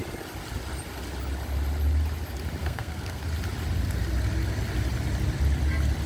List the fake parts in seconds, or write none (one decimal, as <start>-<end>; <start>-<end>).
2.6-3.2